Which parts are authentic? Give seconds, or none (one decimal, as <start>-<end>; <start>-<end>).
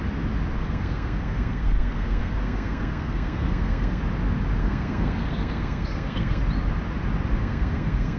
0.0-0.6; 4.0-4.6; 6.4-7.4